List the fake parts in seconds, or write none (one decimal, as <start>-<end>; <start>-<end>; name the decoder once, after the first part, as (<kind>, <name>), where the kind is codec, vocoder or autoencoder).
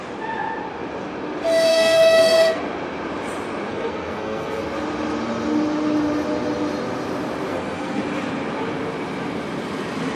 1.7-2.6 (codec, SNAC); 3.7-4.6; 7.5-8.0